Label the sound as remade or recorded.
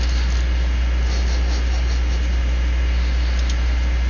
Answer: recorded